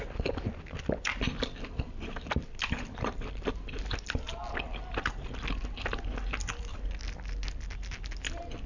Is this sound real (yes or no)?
yes